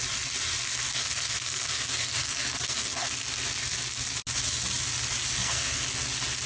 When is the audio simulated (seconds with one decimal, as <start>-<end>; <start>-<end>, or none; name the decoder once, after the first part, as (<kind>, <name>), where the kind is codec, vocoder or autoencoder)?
1.0-3.1 (codec, SNAC); 5.3-5.8